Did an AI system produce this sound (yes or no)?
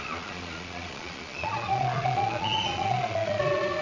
yes